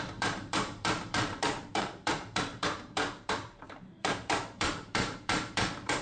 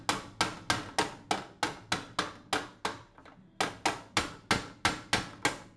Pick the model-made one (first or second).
first